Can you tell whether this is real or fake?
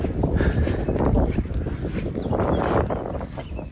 real